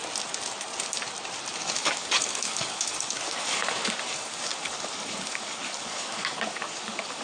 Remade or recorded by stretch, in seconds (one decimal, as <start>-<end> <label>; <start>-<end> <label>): 0.0-1.6 recorded; 1.6-7.2 remade